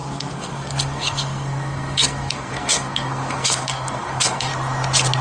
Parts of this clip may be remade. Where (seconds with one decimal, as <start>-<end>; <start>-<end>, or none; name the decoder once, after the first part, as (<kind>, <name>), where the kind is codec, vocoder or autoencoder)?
0.0-4.5 (codec, SNAC)